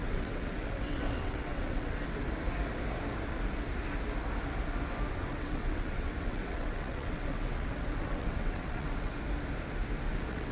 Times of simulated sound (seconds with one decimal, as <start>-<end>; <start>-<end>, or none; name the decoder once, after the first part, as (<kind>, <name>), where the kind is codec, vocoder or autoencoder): 0.0-2.0 (vocoder, WaveNeXt); 5.1-9.1; 10.1-10.5